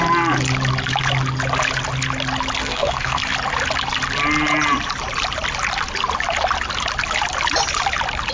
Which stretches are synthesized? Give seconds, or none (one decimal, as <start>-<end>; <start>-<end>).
2.6-3.2